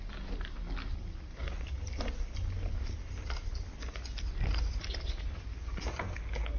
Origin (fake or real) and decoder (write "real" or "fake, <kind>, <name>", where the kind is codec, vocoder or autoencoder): real